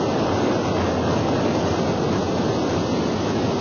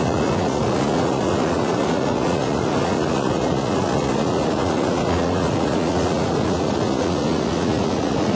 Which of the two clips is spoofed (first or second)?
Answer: second